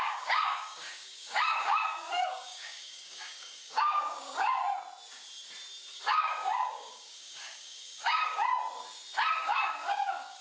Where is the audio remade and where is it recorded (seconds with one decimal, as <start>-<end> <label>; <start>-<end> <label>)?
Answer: 0.0-4.6 remade; 4.6-5.9 recorded; 5.9-8.5 remade; 8.5-9.3 recorded; 9.3-10.4 remade